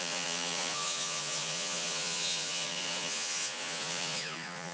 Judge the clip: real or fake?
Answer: fake